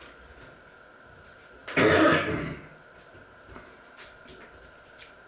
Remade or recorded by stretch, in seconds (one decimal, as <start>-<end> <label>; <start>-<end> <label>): 0.0-1.6 recorded; 1.6-3.2 remade; 3.2-5.3 recorded